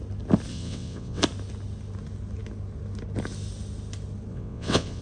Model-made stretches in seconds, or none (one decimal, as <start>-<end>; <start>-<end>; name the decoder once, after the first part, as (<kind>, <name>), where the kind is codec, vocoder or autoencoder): 0.5-1.2 (vocoder, WaveNeXt); 4.3-5.0